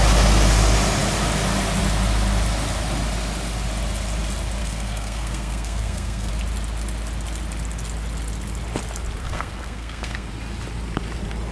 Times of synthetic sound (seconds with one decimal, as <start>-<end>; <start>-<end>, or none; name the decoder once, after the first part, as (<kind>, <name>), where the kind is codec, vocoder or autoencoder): 4.6-6.3 (codec, SNAC); 9.2-10.3